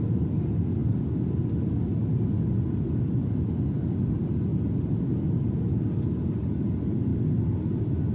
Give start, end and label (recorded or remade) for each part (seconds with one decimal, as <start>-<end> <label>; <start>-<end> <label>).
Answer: 0.0-8.1 recorded